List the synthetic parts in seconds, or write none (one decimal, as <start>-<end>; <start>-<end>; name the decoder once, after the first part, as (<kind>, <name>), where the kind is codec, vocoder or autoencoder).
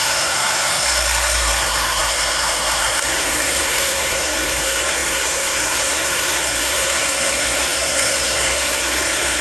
0.0-9.4 (codec, SNAC)